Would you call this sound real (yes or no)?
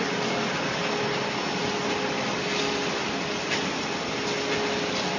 yes